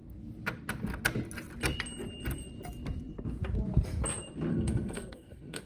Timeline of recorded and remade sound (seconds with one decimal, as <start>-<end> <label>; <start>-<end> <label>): 0.0-4.5 recorded; 4.5-5.7 remade